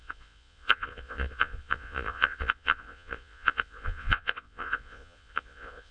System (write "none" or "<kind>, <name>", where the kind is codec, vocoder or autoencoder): vocoder, Vocos